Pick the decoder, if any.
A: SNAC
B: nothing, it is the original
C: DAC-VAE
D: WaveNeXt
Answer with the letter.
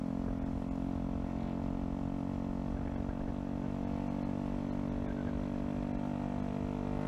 B